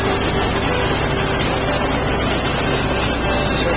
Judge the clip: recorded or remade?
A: recorded